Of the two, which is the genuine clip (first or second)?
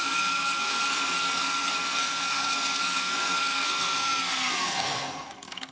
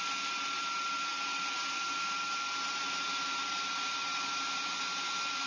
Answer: second